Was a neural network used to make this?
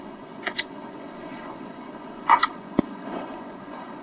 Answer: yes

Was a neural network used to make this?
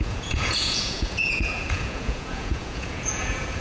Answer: yes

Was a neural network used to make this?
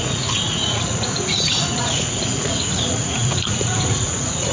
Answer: yes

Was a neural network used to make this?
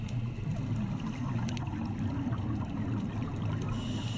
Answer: no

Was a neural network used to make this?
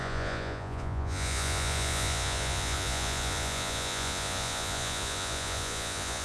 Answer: yes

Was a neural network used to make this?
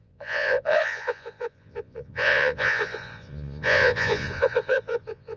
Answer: yes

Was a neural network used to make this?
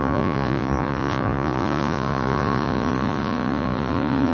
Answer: yes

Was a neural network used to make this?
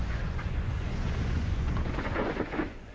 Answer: yes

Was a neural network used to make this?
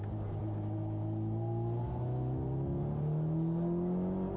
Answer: no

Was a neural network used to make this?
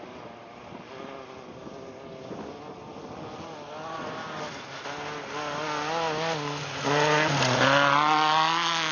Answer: no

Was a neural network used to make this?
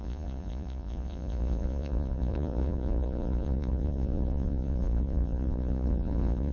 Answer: yes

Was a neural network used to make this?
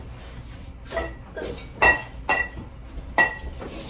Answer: no